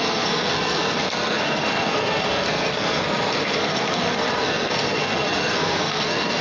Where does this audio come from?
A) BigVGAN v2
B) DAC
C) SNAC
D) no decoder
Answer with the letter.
C